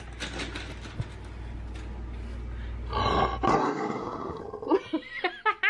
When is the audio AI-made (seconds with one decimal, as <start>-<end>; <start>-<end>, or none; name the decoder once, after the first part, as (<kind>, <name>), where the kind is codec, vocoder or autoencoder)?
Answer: 3.5-4.4 (codec, SNAC)